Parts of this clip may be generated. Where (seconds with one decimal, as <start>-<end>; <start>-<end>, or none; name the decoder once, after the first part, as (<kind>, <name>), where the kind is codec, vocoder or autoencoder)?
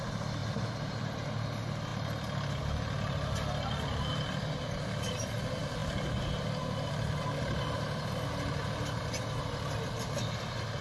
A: 0.4-1.2 (vocoder, BigVGAN v2)